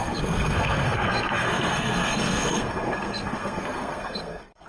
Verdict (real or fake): fake